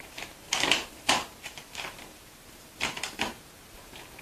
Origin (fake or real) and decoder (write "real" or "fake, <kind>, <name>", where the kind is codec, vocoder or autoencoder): fake, vocoder, BigVGAN v2